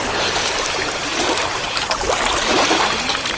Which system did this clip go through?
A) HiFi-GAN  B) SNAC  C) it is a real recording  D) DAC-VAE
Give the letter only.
C